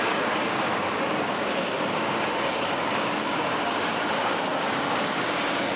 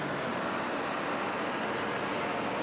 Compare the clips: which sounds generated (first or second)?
first